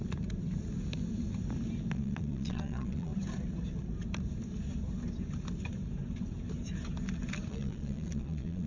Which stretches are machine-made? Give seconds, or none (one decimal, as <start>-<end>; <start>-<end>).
1.9-3.1; 7.5-8.7